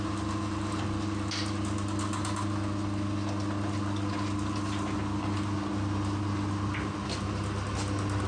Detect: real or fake real